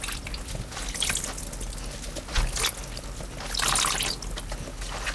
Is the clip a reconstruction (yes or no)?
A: no